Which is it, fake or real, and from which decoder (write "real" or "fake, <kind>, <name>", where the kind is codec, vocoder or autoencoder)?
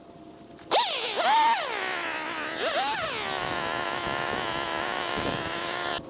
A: real